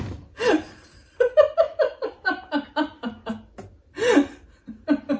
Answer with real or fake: real